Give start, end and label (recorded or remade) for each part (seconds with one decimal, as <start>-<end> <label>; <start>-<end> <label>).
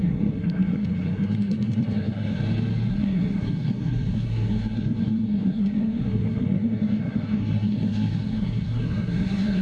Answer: 0.0-2.4 remade; 2.4-2.9 recorded; 2.9-9.6 remade